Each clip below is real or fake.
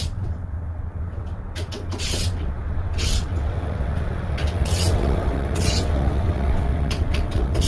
fake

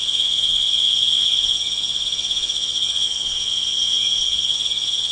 fake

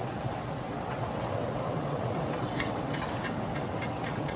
fake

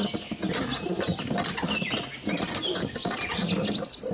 real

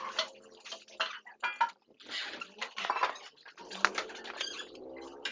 real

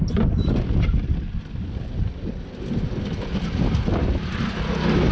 real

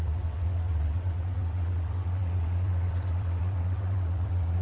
fake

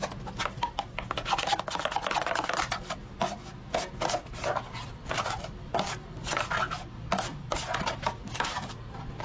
real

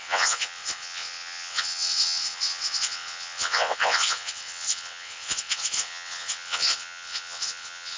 fake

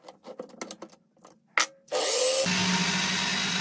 real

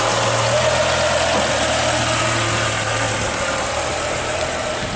real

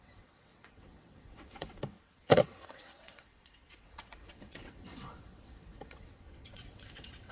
fake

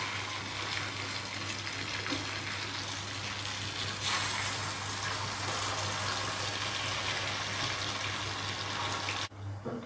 real